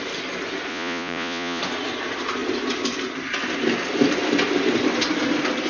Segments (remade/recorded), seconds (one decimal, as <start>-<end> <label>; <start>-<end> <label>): 0.0-0.7 recorded; 0.7-1.6 remade; 1.6-5.7 recorded